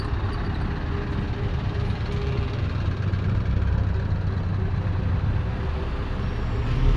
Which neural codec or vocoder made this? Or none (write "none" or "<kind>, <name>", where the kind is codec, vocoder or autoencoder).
none